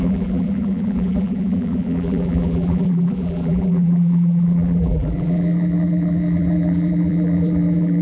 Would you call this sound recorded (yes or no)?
no